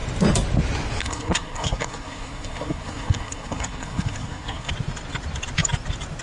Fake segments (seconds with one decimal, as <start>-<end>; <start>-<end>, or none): 1.0-4.7